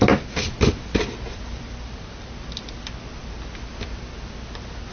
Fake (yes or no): no